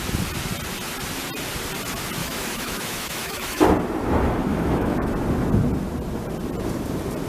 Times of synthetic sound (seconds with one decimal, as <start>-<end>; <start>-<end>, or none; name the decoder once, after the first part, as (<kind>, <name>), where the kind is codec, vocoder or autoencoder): 2.2-3.6 (autoencoder, DAC-VAE); 4.5-5.1